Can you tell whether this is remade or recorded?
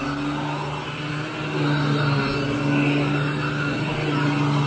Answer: recorded